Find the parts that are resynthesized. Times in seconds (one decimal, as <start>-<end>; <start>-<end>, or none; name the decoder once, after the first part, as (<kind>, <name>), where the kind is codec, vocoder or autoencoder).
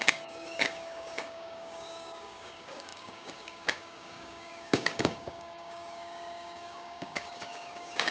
0.0-8.1 (codec, DAC)